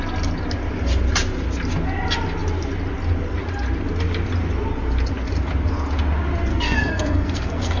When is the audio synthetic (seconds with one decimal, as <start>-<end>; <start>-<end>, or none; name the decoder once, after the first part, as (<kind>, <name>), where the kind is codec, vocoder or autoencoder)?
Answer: 6.5-7.8 (codec, SNAC)